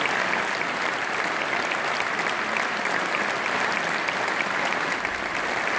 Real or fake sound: real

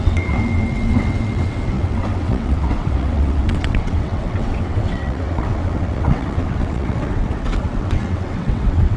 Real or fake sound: fake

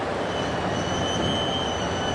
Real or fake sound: real